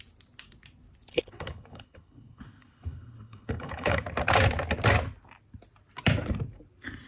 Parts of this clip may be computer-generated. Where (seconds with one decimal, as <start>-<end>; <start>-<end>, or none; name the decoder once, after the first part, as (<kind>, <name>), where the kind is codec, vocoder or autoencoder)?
1.1-4.0 (codec, HILCodec)